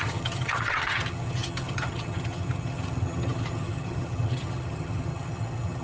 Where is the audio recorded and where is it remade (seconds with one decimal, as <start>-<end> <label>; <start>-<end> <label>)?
0.0-5.8 remade